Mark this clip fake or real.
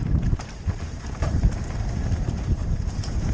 fake